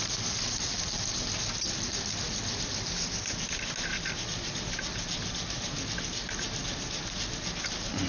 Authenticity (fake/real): real